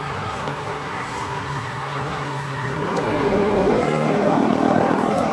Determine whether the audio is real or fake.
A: fake